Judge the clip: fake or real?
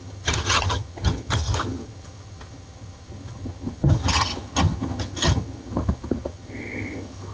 fake